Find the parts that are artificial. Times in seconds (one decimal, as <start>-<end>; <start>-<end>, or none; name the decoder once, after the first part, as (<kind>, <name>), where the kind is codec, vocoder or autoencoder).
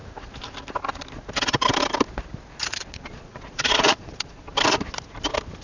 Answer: 2.8-4.4 (vocoder, Vocos)